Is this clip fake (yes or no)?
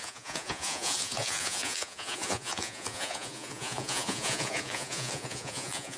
yes